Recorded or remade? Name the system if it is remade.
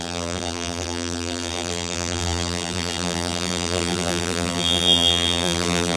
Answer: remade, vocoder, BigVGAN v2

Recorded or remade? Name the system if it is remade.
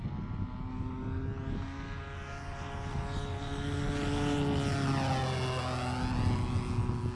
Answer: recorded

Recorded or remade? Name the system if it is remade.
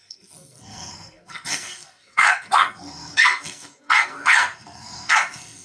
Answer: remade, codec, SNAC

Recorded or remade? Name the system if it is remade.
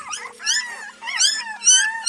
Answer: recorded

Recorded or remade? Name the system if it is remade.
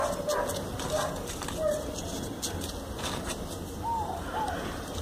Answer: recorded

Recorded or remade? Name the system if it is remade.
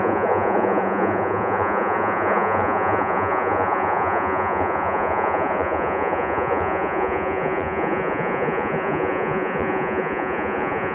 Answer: remade, vocoder, Vocos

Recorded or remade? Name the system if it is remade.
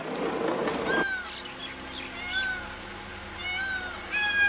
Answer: recorded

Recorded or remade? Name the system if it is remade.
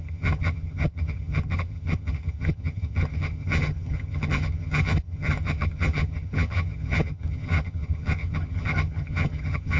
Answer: remade, vocoder, HiFi-GAN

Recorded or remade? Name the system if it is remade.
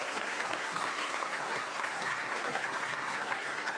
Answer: remade, codec, SNAC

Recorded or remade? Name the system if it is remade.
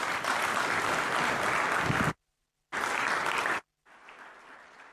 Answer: recorded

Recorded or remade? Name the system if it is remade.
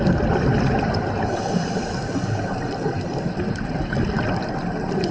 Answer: remade, vocoder, BigVGAN v2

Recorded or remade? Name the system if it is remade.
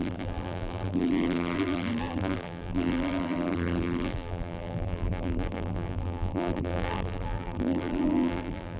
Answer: remade, vocoder, BigVGAN v2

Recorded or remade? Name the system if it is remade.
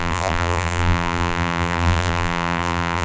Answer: remade, vocoder, BigVGAN v2